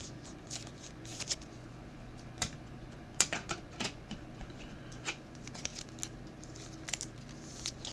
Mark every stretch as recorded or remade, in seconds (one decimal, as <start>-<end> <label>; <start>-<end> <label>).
0.0-5.7 remade; 5.7-7.5 recorded; 7.5-7.9 remade